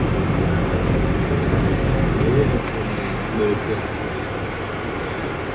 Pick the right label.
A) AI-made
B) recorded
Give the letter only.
B